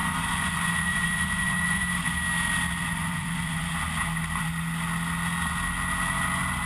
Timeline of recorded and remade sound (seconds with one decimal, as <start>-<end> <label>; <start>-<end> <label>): 0.0-1.8 remade; 1.8-2.8 recorded; 2.8-3.7 remade; 3.7-6.7 recorded